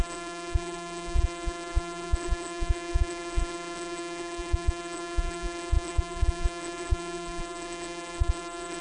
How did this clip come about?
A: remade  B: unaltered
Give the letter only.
A